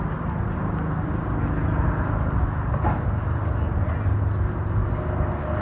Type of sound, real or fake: real